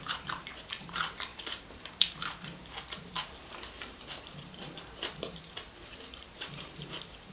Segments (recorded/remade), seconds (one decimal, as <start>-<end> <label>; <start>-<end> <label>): 0.0-7.3 remade